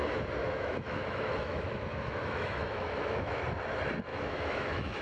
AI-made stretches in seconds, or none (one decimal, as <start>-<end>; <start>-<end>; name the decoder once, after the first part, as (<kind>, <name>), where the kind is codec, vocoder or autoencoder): 0.4-3.4 (autoencoder, DAC-VAE); 4.1-5.0